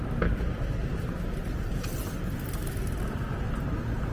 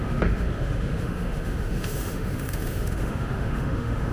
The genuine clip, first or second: first